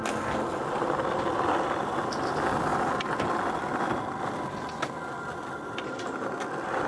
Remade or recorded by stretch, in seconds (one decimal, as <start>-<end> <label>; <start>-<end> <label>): 0.0-6.9 recorded